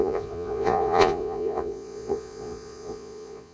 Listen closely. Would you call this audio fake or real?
fake